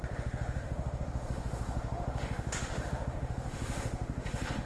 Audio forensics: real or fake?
fake